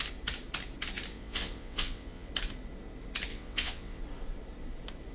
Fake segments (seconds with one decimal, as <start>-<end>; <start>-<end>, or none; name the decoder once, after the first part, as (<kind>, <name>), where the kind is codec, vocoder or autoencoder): 1.1-2.3 (vocoder, WaveNeXt); 3.3-4.0